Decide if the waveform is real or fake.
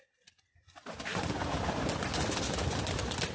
real